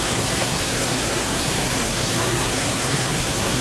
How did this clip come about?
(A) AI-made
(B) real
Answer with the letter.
A